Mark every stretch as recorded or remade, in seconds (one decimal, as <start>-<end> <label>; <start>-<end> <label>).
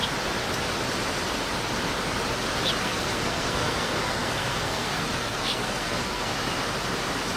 0.0-2.8 recorded; 2.8-6.3 remade; 6.3-7.4 recorded